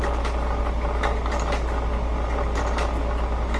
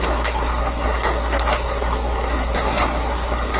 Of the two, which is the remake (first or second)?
second